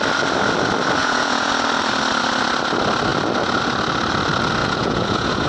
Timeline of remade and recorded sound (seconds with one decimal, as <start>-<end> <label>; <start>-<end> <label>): 0.0-1.0 recorded; 1.0-1.5 remade; 1.5-4.6 recorded; 4.6-5.5 remade